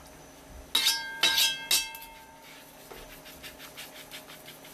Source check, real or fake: real